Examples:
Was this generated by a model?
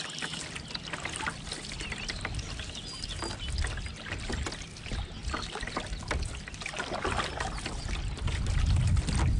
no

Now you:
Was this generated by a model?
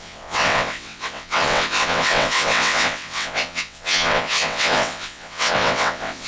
yes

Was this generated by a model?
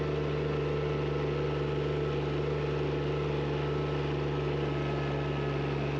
no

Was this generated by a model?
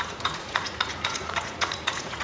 yes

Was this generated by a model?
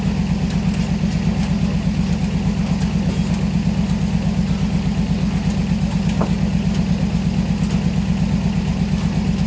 no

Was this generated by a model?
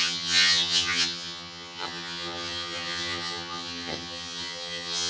yes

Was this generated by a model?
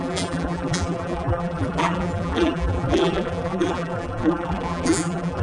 yes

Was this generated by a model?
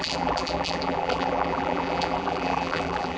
yes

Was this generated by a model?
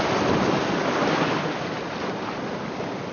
no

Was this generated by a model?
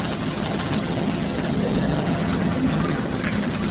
yes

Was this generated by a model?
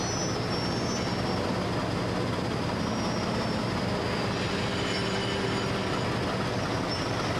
no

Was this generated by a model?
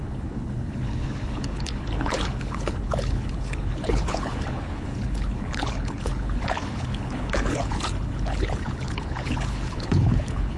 yes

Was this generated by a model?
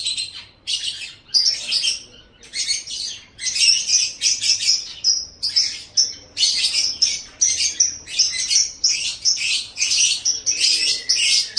no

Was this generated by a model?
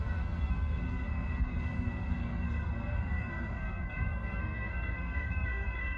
yes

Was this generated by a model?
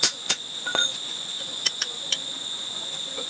yes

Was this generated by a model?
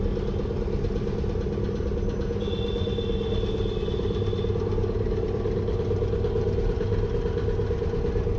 no